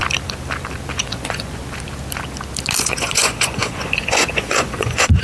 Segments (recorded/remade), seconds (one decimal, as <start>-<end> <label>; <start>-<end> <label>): 0.0-1.0 recorded; 1.0-1.6 remade; 1.6-2.8 recorded; 2.8-5.2 remade